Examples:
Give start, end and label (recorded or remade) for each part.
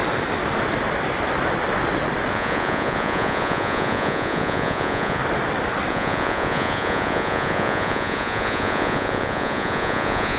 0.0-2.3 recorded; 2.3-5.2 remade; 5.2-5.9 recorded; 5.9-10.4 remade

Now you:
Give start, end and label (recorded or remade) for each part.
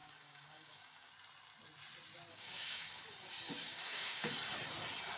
0.0-1.1 remade; 1.1-2.3 recorded; 2.3-3.0 remade; 3.0-3.6 recorded; 3.6-4.3 remade; 4.3-5.2 recorded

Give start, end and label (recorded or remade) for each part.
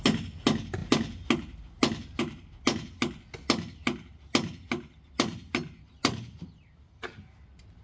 0.0-7.8 recorded